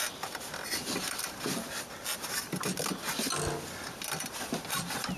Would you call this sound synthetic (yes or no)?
no